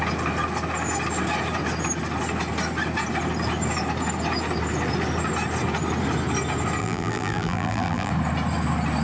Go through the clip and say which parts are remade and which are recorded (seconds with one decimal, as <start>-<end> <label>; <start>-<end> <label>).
0.0-6.8 recorded; 6.8-8.1 remade; 8.1-9.0 recorded